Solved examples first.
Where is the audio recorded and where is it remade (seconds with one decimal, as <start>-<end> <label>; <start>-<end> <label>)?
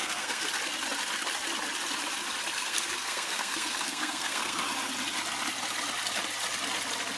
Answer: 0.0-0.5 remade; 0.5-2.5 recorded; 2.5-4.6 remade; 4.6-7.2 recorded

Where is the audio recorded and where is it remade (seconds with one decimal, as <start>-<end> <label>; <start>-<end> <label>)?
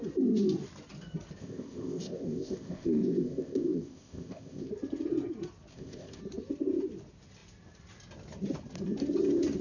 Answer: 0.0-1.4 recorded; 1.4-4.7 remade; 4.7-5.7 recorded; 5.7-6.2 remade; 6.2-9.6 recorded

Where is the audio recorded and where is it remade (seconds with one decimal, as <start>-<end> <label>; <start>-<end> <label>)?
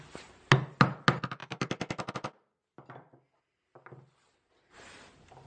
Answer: 0.0-5.5 recorded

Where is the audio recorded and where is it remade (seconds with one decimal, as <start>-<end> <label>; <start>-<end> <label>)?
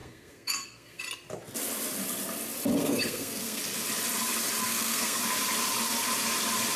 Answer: 0.0-1.0 remade; 1.0-2.8 recorded; 2.8-3.6 remade; 3.6-4.6 recorded; 4.6-5.2 remade; 5.2-6.8 recorded